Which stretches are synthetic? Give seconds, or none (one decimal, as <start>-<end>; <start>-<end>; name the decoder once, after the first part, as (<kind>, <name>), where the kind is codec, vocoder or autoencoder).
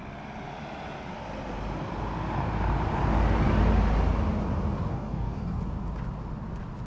4.9-5.6 (codec, DAC)